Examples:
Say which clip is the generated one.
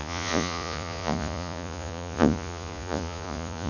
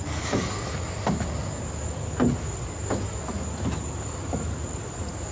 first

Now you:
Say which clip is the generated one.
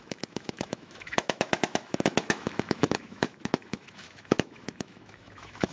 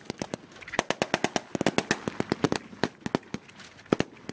first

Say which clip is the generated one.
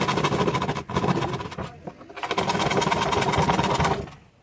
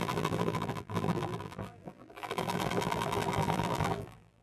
second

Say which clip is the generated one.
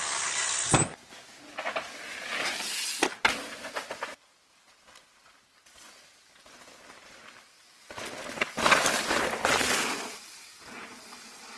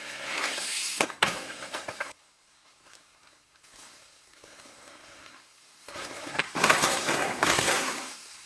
second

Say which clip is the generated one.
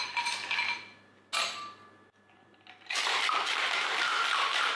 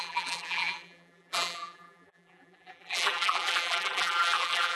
second